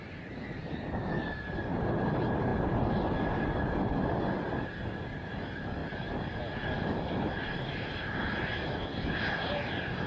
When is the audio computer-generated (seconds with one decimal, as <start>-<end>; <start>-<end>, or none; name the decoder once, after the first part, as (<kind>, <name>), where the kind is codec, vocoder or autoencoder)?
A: none